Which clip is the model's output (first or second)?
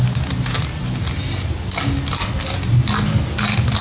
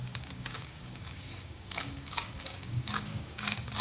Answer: second